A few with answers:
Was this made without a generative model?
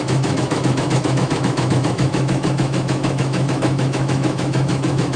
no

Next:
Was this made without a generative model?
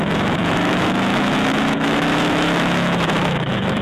no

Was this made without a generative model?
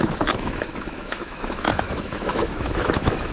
no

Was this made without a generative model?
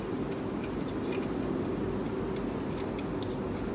yes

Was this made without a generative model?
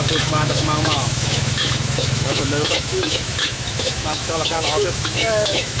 no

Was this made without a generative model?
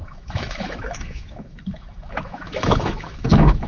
no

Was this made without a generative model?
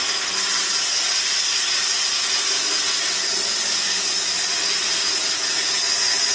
yes